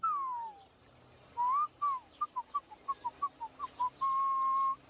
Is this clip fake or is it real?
real